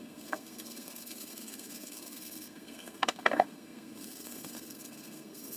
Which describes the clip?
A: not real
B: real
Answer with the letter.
A